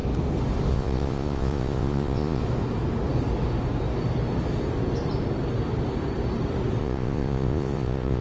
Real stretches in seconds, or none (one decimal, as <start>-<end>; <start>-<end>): 0.0-0.7; 2.4-6.8